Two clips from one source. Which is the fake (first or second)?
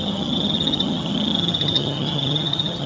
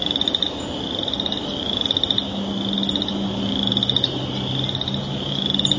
first